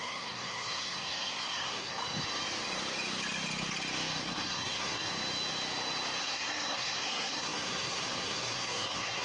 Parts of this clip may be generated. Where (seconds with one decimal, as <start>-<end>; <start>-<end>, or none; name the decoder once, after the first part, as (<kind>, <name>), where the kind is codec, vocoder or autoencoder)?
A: 0.0-1.9 (codec, SNAC); 4.2-5.1; 6.2-9.2